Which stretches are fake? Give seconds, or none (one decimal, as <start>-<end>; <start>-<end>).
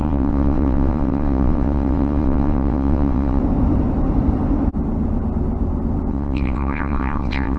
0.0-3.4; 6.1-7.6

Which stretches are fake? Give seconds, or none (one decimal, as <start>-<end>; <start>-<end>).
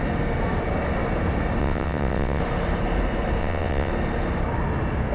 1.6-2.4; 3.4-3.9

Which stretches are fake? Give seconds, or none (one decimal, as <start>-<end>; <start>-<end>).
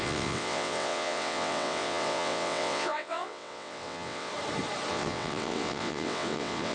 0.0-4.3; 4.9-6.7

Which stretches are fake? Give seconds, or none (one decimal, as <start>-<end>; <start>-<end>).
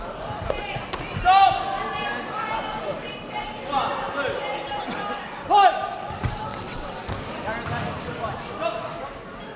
6.5-7.0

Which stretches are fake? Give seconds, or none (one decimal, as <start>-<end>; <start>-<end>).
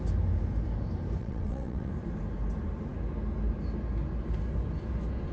1.2-1.9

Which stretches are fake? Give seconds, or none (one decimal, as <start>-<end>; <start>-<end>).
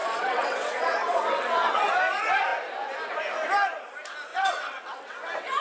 0.0-1.9; 4.3-5.6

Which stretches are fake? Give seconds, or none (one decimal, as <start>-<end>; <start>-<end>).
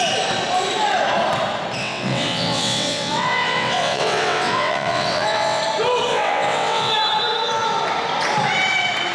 1.8-5.6; 6.1-6.9